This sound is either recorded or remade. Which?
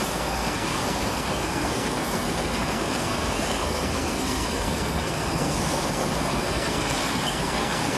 remade